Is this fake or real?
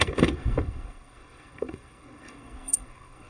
fake